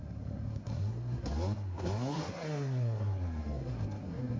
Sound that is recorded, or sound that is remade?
remade